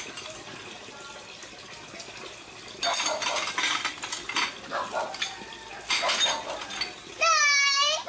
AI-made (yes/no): no